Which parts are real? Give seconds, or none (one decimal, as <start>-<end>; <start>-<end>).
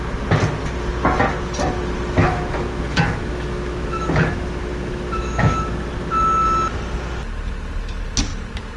0.0-2.2; 5.7-8.8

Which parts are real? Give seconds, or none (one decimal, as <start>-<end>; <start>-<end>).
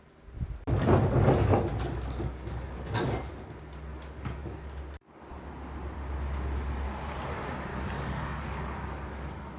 0.0-1.7; 3.3-3.9; 4.8-7.7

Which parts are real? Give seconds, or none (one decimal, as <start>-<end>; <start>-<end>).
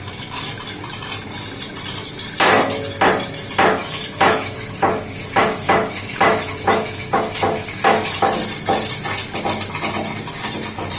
0.0-3.8; 8.4-11.0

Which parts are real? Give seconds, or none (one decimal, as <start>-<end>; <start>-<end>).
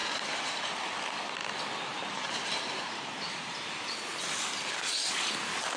0.6-1.9; 3.6-5.8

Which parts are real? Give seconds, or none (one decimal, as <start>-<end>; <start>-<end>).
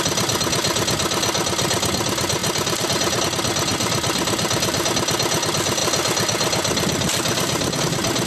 0.0-2.4; 3.2-3.7; 4.9-8.3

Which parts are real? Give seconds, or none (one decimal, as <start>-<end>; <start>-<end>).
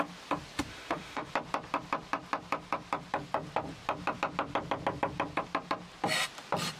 0.0-0.7; 1.3-6.8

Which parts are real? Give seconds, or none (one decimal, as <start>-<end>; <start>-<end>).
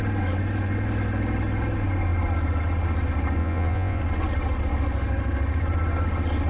0.0-3.4; 4.0-6.5